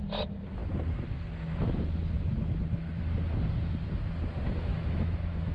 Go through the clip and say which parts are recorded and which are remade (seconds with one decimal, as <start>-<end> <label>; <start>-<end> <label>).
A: 0.0-4.7 recorded; 4.7-5.5 remade